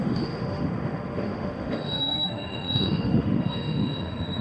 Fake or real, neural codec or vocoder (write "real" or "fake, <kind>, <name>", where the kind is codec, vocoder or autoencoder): fake, autoencoder, DAC-VAE